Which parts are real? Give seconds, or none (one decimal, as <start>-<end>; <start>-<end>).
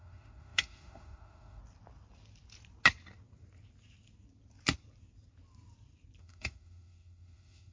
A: 1.6-6.2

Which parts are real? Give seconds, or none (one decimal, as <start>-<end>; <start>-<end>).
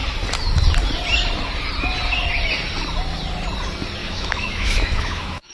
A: 0.0-4.0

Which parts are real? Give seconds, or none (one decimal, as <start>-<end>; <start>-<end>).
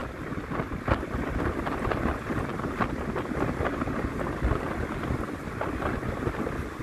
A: 0.0-6.8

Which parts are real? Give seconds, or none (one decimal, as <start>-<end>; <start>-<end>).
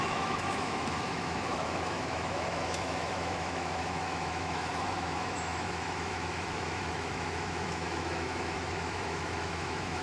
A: none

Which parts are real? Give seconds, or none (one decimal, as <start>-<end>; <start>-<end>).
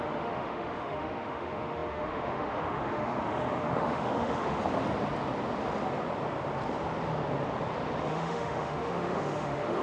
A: 4.6-8.0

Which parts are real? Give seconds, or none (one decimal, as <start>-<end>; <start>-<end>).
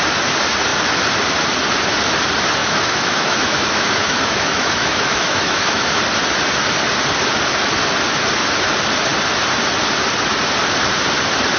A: 0.0-2.6; 6.0-11.6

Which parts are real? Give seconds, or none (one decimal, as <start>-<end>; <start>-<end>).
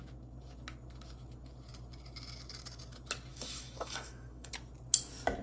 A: 0.0-3.3; 4.5-5.4